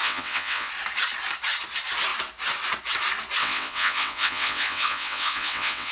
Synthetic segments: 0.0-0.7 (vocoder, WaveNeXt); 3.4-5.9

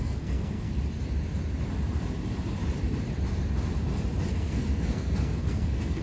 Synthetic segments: 0.0-0.7 (codec, SNAC); 4.3-6.0